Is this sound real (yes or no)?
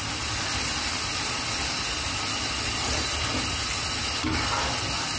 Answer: yes